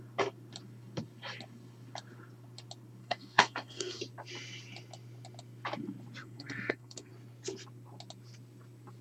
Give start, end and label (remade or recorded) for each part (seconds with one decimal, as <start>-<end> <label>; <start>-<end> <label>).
0.0-3.0 recorded; 3.0-4.0 remade; 4.0-6.2 recorded; 6.2-7.1 remade; 7.1-9.0 recorded

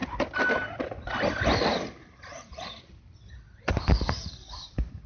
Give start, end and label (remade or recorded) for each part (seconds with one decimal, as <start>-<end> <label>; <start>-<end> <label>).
0.0-5.1 recorded

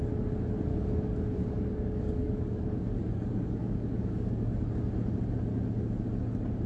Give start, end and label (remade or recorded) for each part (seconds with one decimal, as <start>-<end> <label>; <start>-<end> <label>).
0.0-0.7 recorded; 0.7-4.7 remade; 4.7-6.7 recorded

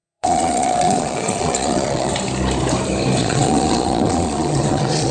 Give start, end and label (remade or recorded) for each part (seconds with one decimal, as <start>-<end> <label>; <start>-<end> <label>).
0.0-2.1 remade; 2.1-3.2 recorded; 3.2-5.1 remade

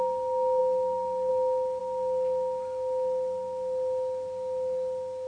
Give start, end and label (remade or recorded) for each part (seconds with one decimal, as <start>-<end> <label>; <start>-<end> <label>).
0.0-5.3 recorded

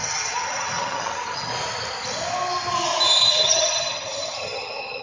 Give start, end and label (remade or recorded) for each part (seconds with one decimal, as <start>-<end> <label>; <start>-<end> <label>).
0.0-1.5 remade; 1.5-3.3 recorded; 3.3-5.0 remade

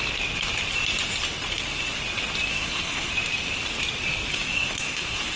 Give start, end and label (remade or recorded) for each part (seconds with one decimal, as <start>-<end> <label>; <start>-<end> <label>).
0.0-2.5 recorded; 2.5-3.1 remade; 3.1-4.3 recorded; 4.3-5.4 remade

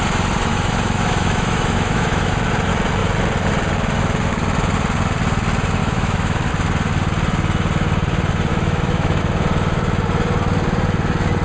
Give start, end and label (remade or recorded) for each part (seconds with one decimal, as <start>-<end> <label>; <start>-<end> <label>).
0.0-0.5 recorded; 0.5-2.3 remade; 2.3-5.8 recorded; 5.8-6.5 remade; 6.5-8.5 recorded; 8.5-9.2 remade; 9.2-11.4 recorded